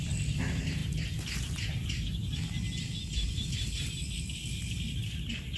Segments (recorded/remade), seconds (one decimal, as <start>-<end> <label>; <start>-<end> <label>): 0.0-5.6 recorded